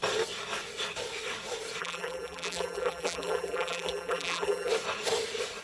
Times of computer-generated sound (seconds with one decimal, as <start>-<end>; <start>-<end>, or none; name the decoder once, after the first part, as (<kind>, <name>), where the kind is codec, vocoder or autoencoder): 1.8-4.7 (vocoder, BigVGAN v2)